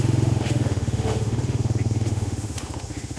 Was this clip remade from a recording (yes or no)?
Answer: yes